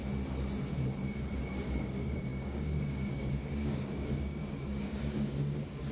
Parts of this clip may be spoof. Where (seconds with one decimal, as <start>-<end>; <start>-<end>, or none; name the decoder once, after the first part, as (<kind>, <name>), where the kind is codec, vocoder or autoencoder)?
1.4-5.9 (codec, DAC)

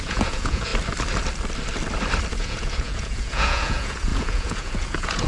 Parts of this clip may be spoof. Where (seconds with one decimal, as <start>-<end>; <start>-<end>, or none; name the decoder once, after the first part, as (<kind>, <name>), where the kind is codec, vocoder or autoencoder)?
0.0-0.7 (vocoder, Vocos); 2.3-5.3

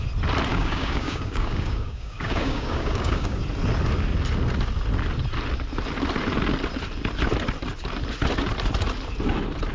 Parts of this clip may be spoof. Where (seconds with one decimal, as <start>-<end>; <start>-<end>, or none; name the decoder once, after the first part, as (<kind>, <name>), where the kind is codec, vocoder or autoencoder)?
0.5-3.4 (codec, DAC)

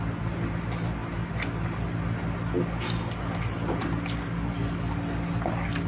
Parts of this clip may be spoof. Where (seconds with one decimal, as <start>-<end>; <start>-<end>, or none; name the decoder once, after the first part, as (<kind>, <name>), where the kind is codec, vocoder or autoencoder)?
none

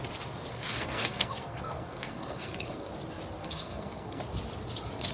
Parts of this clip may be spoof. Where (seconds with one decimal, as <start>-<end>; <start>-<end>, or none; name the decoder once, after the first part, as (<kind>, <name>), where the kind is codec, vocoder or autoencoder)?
0.5-2.9 (codec, SNAC); 3.4-4.2

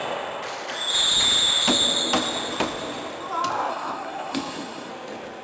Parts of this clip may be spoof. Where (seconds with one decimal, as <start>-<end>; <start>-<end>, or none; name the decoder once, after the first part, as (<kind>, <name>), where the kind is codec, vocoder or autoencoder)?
3.7-4.9 (codec, SNAC)